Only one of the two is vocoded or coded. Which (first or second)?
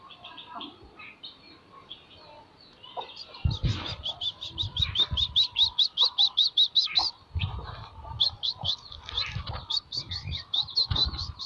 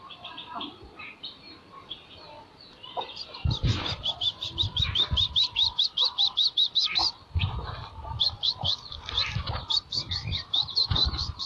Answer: second